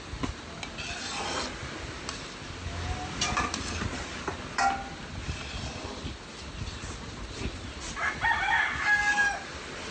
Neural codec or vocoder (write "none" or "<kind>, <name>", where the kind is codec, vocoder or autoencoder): none